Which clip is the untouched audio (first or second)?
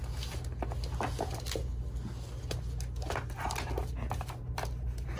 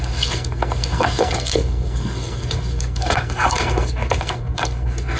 first